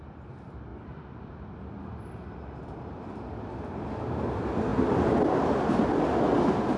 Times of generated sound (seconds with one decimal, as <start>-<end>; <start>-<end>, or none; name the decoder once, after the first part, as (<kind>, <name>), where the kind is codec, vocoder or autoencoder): none